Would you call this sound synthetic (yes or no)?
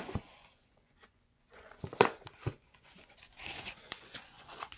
yes